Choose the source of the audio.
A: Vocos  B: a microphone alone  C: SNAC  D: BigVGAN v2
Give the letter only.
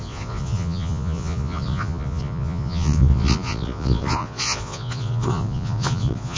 A